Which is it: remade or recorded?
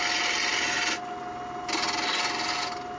recorded